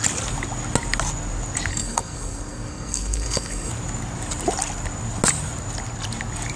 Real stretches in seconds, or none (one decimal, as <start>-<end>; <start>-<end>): 0.0-1.7; 3.7-6.6